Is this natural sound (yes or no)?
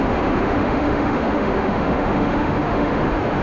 no